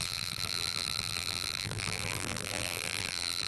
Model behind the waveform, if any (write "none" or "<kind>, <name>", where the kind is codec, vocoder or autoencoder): vocoder, BigVGAN v2